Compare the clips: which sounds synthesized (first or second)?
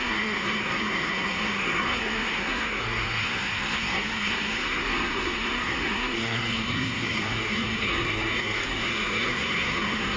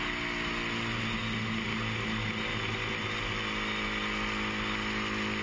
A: first